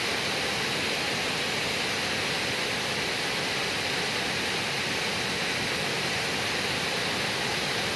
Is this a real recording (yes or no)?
yes